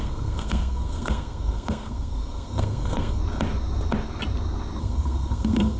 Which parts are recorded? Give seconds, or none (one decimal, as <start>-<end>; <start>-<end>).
3.2-4.8